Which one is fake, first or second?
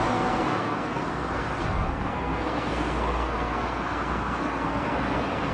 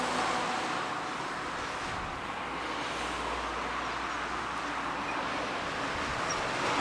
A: first